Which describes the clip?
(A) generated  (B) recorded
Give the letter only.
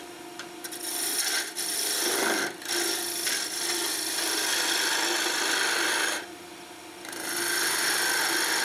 B